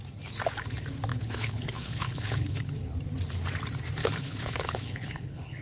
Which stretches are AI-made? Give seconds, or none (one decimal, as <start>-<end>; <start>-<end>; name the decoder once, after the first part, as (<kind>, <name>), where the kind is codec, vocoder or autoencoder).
1.1-2.9 (codec, HILCodec); 4.0-5.6